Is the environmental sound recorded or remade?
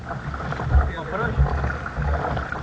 recorded